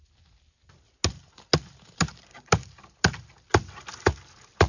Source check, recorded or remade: recorded